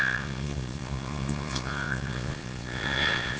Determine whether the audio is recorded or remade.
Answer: remade